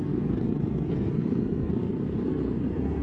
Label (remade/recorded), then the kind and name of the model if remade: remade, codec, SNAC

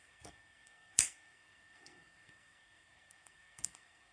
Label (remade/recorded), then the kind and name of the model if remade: remade, codec, SNAC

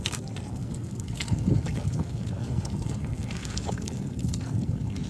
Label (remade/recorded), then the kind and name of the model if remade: remade, codec, SNAC